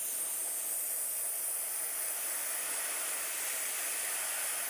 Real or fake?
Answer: real